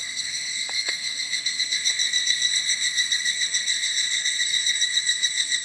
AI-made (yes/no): yes